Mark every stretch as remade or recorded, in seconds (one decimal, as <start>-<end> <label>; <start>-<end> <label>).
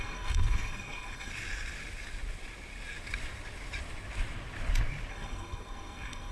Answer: 0.0-1.3 remade; 1.3-5.1 recorded; 5.1-6.3 remade